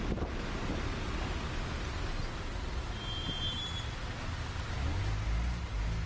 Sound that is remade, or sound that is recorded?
recorded